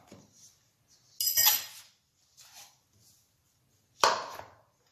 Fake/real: real